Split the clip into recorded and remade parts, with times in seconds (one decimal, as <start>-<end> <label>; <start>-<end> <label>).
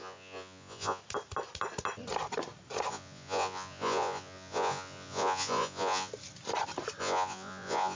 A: 0.0-1.0 remade; 1.0-2.9 recorded; 2.9-6.1 remade; 6.1-7.0 recorded; 7.0-8.0 remade